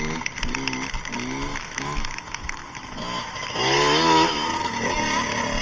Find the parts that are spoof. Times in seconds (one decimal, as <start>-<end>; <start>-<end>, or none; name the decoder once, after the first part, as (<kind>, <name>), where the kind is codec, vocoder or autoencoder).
1.5-4.9 (autoencoder, DAC-VAE)